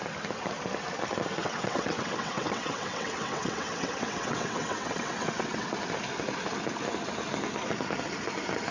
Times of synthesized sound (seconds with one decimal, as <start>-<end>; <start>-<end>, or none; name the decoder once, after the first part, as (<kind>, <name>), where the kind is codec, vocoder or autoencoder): 1.4-5.7 (vocoder, WaveNeXt)